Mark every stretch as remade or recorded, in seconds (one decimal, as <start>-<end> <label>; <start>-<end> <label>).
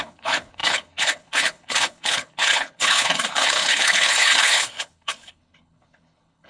0.0-6.5 remade